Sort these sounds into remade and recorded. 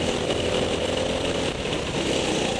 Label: remade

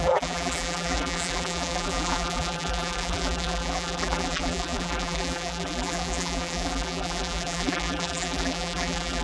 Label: remade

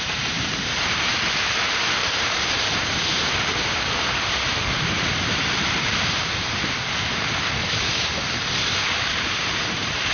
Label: remade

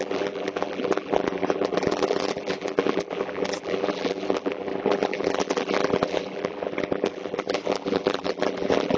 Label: remade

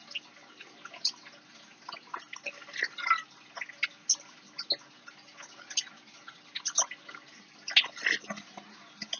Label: recorded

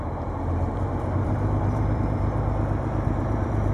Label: remade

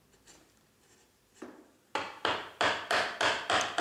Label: remade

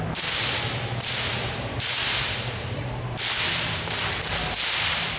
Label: remade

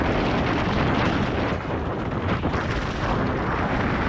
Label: recorded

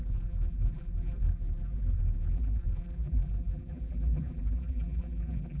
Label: remade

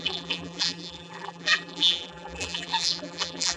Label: remade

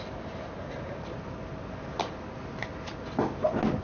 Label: recorded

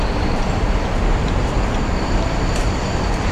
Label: remade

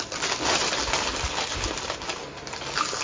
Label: recorded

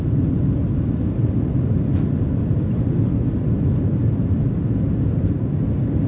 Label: recorded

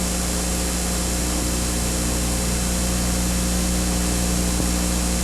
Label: recorded